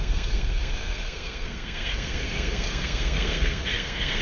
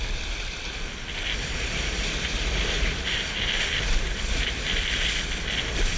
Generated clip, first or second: first